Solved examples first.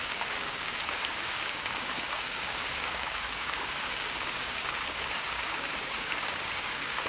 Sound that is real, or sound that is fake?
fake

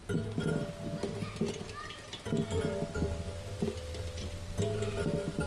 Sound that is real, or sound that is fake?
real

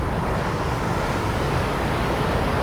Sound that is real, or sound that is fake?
fake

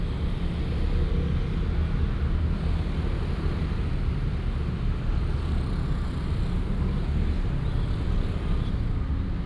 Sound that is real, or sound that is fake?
real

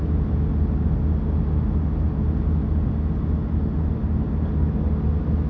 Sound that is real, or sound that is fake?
real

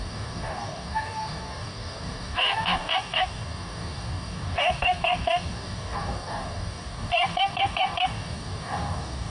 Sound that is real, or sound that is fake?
fake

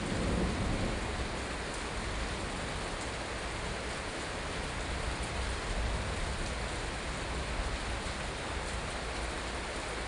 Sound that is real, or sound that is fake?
real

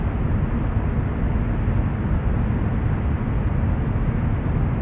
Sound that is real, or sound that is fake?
real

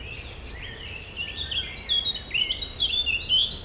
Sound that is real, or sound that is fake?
real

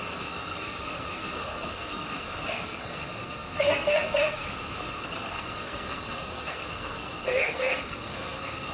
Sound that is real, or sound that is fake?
fake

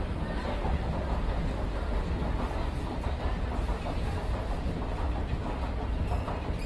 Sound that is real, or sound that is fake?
real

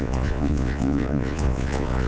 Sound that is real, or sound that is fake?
fake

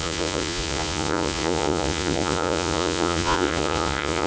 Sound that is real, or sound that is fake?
fake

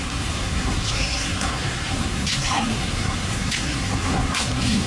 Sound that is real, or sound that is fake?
fake